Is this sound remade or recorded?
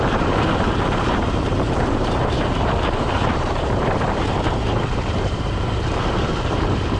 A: remade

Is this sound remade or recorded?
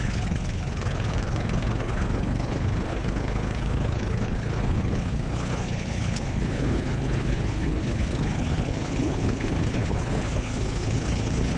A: remade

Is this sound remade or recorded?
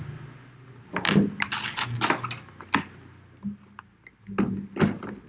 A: recorded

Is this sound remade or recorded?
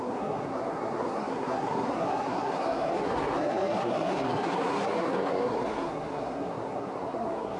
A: remade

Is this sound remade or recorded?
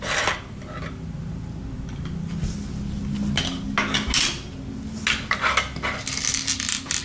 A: recorded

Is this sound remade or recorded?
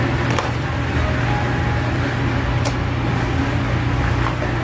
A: recorded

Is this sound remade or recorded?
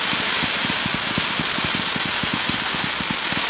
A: recorded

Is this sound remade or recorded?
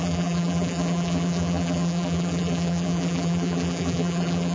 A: remade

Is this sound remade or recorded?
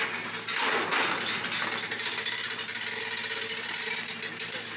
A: recorded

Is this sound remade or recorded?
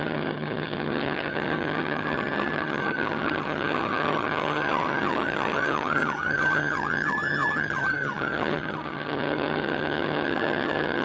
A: remade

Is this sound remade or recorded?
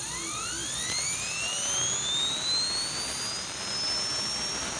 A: recorded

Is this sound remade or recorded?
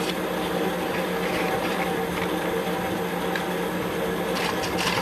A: recorded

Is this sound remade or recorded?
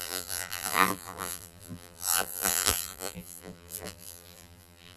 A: remade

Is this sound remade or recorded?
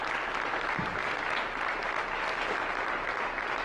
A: recorded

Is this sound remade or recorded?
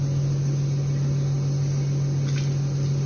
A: recorded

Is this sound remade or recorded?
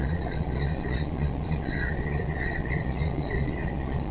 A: remade